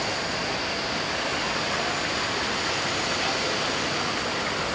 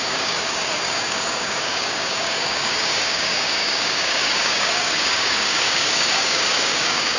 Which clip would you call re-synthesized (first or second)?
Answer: second